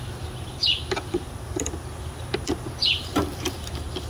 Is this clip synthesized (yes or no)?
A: no